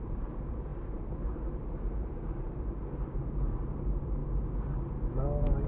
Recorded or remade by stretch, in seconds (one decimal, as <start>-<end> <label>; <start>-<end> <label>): 0.0-4.2 remade; 4.2-5.7 recorded